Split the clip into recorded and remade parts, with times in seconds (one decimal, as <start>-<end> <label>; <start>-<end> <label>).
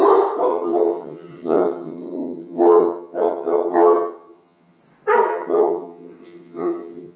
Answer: 0.0-0.5 recorded; 0.5-4.8 remade; 4.8-5.3 recorded; 5.3-7.2 remade